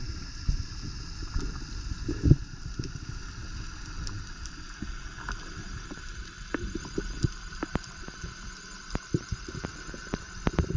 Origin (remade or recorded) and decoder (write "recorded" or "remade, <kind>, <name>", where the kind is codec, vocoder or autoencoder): recorded